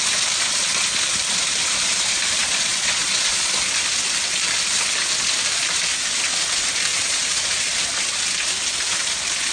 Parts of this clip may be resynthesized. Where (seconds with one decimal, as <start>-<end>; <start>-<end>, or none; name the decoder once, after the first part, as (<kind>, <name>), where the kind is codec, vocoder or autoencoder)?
2.4-3.5 (vocoder, Vocos); 6.9-7.6